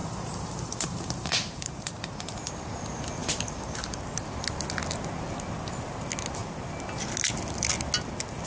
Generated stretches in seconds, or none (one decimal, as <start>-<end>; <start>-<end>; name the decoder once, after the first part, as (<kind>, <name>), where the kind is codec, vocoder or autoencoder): 0.0-2.8 (vocoder, BigVGAN v2); 3.2-4.0